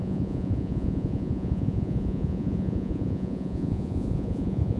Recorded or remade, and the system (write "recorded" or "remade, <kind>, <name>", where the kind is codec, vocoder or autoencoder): remade, vocoder, Vocos